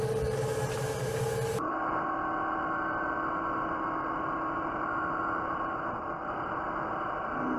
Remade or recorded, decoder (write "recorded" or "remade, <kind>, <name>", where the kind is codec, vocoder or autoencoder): recorded